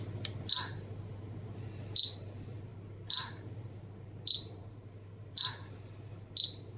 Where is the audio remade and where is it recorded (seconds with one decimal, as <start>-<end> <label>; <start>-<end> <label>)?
0.0-4.6 recorded; 4.6-5.5 remade; 5.5-6.8 recorded